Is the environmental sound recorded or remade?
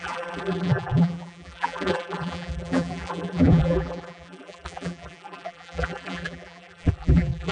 remade